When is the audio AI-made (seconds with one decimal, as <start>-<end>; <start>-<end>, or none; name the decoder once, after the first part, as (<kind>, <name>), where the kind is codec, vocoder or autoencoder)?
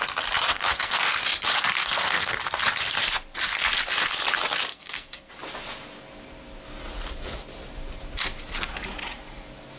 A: 0.5-1.1 (codec, SNAC); 1.8-2.3; 4.7-5.3